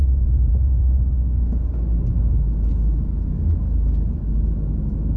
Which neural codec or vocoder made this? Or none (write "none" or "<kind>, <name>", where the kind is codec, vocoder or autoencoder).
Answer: none